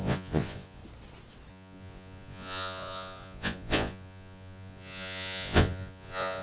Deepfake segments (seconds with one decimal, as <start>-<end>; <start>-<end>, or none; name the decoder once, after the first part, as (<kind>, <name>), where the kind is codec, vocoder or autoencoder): 0.0-0.8 (vocoder, Vocos); 1.5-6.4

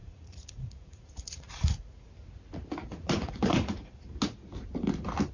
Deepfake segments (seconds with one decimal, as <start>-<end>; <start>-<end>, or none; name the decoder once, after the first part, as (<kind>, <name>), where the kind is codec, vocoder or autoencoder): 0.0-2.1 (vocoder, Vocos); 2.8-4.0

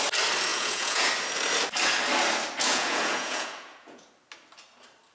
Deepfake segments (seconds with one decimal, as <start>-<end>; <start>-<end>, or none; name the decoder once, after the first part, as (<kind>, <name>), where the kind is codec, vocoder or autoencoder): 0.5-1.1 (vocoder, Vocos); 2.7-4.1

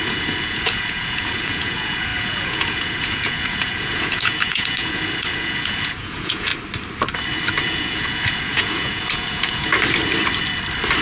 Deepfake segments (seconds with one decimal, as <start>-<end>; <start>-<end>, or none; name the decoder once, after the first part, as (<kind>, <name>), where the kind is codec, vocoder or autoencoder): 0.0-6.5 (vocoder, Vocos); 7.6-9.7

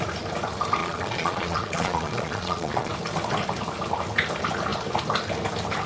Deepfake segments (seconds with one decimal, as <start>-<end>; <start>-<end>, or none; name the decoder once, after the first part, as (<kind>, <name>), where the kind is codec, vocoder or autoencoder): 0.8-2.9 (vocoder, Vocos)